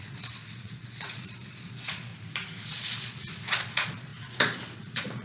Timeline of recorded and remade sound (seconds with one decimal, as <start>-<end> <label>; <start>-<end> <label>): 0.0-2.1 remade; 2.1-2.7 recorded; 2.7-5.2 remade